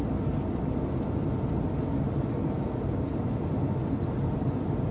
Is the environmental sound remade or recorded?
recorded